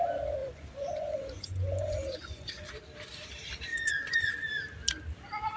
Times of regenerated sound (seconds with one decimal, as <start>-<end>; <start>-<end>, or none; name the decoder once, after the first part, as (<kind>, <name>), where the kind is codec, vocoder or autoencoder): 0.4-2.7 (vocoder, Vocos); 3.7-4.3